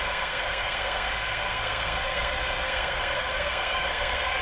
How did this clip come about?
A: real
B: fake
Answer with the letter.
B